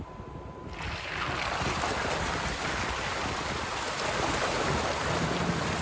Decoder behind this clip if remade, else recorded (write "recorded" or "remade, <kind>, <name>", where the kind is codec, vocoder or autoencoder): recorded